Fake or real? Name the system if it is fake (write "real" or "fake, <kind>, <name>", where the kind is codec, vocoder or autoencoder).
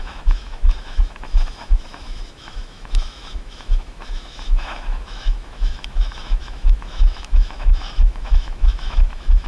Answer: fake, autoencoder, DAC-VAE